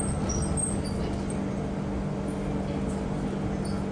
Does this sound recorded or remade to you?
recorded